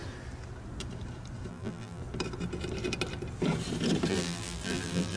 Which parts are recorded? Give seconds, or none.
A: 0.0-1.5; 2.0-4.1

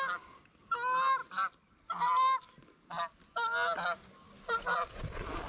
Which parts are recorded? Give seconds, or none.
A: 0.0-5.5

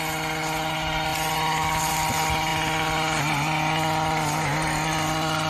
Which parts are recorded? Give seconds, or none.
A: 0.0-5.5

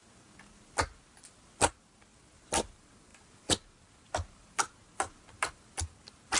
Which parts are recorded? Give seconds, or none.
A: 0.0-6.4